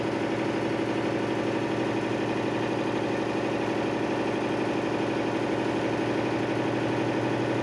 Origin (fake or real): real